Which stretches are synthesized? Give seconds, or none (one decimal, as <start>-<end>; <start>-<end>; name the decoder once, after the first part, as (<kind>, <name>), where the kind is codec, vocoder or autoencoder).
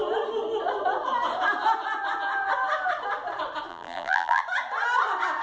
3.7-4.4 (vocoder, BigVGAN v2)